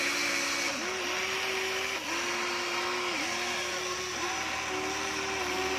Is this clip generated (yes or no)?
no